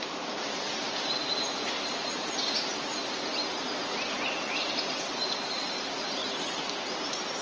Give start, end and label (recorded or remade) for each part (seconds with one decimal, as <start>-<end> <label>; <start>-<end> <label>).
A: 0.0-3.0 remade; 3.0-4.9 recorded; 4.9-6.2 remade; 6.2-6.9 recorded; 6.9-7.4 remade